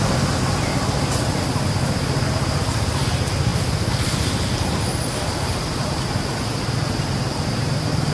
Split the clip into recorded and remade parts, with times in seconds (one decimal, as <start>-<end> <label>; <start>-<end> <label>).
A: 0.0-8.1 recorded